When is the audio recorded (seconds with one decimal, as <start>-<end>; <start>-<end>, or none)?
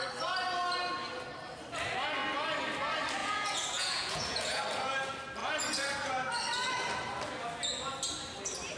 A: 0.0-3.2; 4.6-8.8